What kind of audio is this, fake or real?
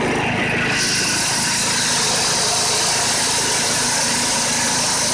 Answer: real